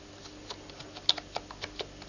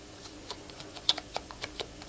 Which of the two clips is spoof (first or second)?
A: second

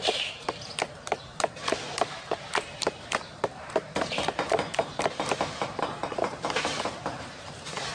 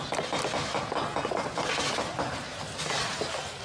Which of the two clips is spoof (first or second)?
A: first